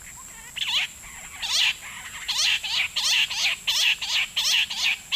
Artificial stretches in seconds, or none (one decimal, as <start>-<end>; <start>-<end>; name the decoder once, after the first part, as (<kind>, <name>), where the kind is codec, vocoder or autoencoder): none